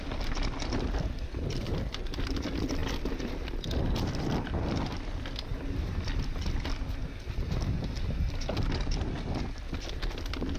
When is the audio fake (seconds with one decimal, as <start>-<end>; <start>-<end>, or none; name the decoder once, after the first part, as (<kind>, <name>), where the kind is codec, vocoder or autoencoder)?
none